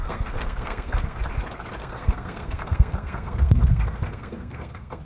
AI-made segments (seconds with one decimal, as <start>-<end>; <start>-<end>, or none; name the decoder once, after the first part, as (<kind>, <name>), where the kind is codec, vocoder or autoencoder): 0.0-1.2 (codec, SNAC); 1.8-5.0